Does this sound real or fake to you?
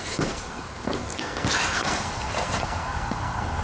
fake